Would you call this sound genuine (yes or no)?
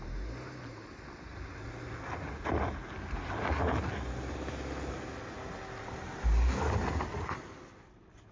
yes